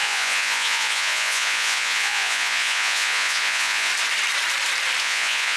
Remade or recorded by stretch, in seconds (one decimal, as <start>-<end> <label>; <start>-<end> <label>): 0.0-3.9 remade; 3.9-5.0 recorded; 5.0-5.6 remade